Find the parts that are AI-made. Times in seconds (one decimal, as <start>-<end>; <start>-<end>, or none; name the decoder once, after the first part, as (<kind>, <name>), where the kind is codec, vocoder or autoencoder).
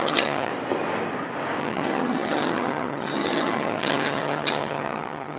0.0-0.5 (vocoder, HiFi-GAN); 1.6-5.4